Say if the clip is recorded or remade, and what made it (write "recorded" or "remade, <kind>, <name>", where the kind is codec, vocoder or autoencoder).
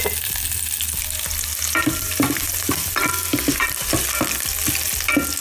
recorded